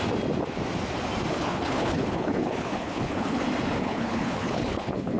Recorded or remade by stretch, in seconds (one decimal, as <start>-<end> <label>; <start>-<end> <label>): 0.0-1.3 recorded; 1.3-3.4 remade; 3.4-3.8 recorded; 3.8-5.2 remade